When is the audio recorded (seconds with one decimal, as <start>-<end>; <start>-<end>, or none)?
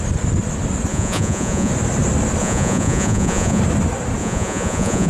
0.0-0.9; 1.7-2.4; 3.6-4.2